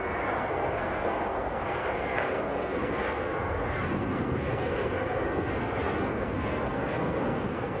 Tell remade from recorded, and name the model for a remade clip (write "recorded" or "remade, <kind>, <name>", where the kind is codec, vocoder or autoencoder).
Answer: remade, codec, SNAC